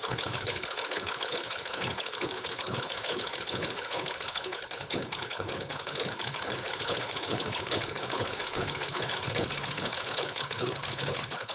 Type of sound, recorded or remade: remade